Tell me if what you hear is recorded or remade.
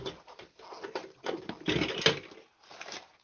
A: recorded